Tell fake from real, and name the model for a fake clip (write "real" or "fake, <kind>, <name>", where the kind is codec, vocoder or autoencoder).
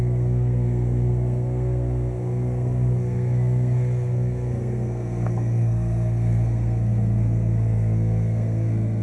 fake, codec, SNAC